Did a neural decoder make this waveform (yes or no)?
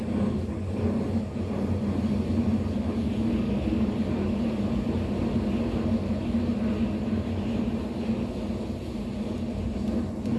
no